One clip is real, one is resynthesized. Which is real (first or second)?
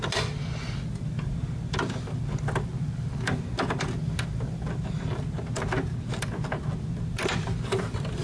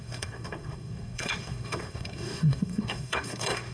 first